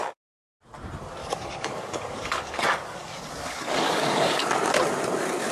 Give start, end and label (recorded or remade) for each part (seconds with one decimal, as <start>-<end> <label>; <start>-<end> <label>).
0.0-1.2 recorded; 1.2-4.5 remade; 4.5-5.5 recorded